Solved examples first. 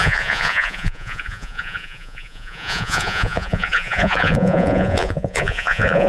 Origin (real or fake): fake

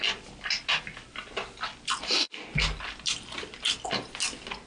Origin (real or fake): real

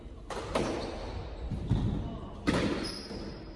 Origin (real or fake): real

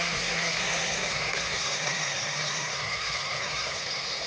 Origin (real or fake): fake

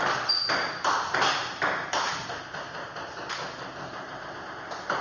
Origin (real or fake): real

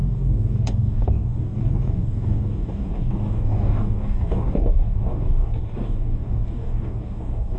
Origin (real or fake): fake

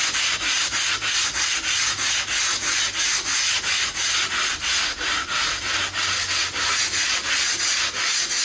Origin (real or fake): real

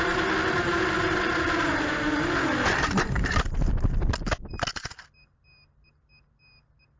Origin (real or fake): real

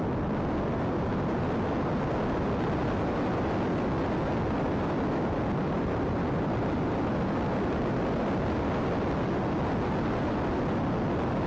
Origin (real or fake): real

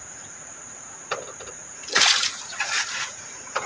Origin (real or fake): fake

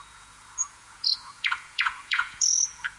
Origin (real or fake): fake